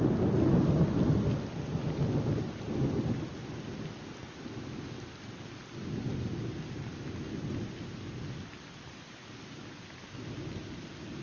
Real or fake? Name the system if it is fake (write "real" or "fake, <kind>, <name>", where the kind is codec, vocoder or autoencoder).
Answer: real